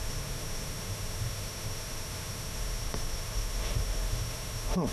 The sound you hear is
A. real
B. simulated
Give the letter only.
B